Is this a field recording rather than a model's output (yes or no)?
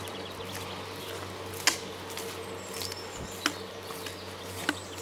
yes